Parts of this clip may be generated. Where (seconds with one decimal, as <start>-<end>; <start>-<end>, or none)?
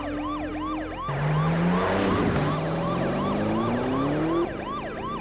none